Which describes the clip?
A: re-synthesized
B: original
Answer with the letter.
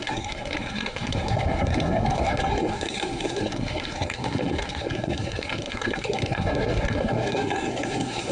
A